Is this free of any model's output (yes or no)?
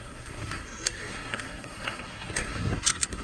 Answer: no